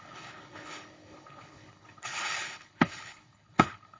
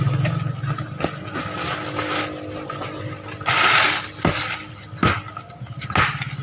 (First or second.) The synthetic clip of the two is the first